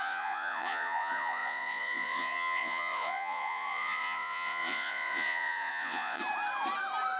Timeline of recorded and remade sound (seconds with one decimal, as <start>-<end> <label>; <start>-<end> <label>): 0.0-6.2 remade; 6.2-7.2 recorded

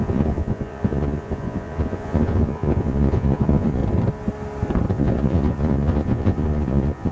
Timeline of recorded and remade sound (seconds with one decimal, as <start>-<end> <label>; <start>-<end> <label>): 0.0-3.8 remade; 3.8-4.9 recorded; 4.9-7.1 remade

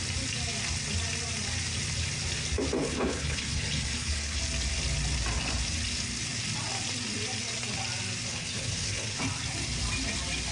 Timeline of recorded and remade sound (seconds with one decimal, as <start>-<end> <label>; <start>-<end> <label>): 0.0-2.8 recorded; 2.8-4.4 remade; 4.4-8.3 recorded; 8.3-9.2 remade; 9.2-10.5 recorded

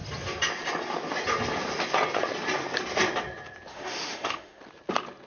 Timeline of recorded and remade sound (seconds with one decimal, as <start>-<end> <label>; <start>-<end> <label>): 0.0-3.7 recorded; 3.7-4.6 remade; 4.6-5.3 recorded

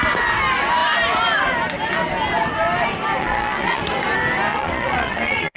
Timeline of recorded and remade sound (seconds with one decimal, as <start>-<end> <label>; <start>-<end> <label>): 0.0-3.2 recorded; 3.2-3.8 remade; 3.8-4.5 recorded; 4.5-5.6 remade